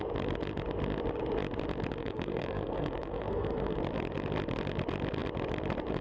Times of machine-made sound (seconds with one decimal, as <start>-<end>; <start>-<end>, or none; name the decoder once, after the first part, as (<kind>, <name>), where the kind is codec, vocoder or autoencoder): 2.0-3.8 (codec, SNAC)